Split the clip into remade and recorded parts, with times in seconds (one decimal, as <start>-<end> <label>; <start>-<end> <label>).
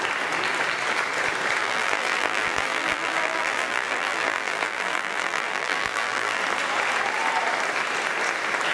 0.0-1.6 recorded; 1.6-6.4 remade; 6.4-8.7 recorded